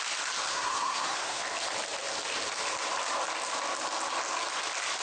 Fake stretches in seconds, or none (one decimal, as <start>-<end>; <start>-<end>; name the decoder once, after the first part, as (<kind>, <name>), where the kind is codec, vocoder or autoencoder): 0.5-1.4 (codec, SNAC)